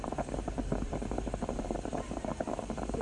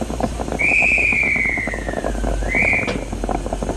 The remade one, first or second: first